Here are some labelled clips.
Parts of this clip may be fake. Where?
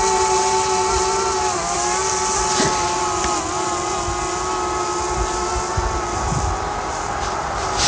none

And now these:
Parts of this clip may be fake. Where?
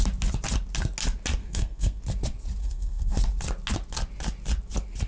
1.4-2.0; 2.6-3.1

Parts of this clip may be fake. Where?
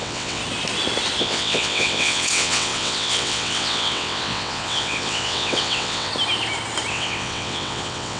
0.0-0.4; 1.2-6.1; 6.9-8.2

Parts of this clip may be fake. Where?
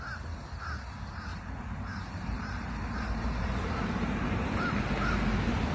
1.3-4.3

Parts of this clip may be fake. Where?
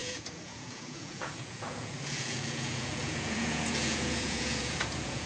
0.0-5.3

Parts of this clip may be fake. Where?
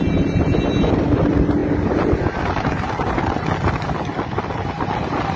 none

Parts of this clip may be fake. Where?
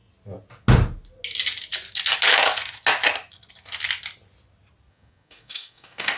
4.9-6.2